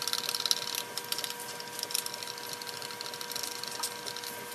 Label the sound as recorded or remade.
recorded